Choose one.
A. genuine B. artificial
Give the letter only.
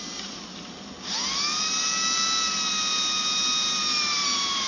A